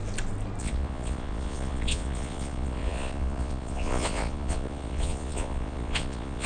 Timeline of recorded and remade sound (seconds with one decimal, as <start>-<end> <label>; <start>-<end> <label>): 0.0-0.6 recorded; 0.6-6.5 remade